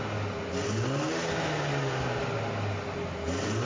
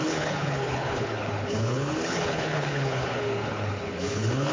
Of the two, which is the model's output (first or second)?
second